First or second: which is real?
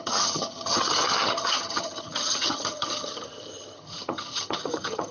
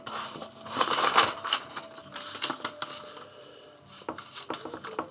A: second